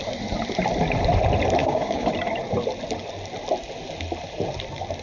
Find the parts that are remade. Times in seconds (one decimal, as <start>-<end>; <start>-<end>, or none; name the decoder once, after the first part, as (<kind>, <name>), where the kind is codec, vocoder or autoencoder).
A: 1.6-2.1 (codec, DAC)